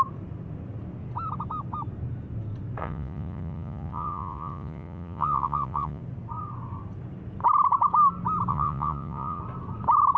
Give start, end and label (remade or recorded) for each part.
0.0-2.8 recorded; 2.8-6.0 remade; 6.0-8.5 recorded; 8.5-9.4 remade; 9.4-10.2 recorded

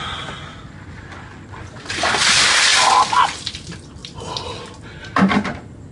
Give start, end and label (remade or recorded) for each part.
0.0-5.9 recorded

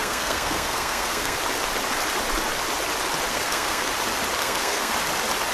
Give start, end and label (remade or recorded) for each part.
0.0-1.4 remade; 1.4-3.3 recorded; 3.3-3.9 remade; 3.9-4.4 recorded; 4.4-4.9 remade; 4.9-5.5 recorded

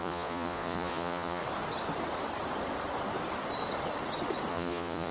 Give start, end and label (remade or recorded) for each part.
0.0-1.4 remade; 1.4-4.5 recorded; 4.5-5.1 remade